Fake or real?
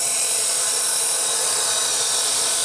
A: real